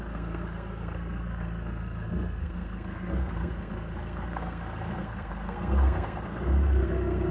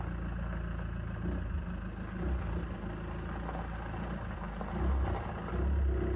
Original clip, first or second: second